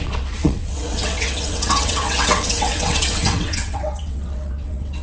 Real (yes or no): no